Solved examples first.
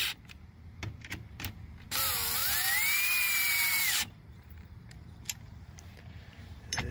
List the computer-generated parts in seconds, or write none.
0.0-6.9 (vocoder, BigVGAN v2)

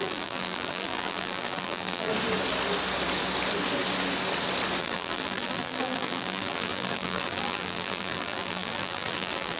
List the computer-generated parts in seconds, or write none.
0.0-2.1 (vocoder, BigVGAN v2); 4.8-9.6

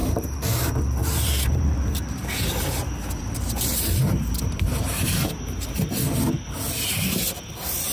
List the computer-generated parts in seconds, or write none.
0.0-0.5 (vocoder, BigVGAN v2); 1.0-5.7